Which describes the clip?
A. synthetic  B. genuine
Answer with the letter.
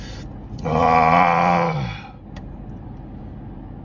B